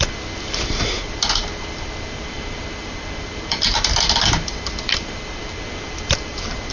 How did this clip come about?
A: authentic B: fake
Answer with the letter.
B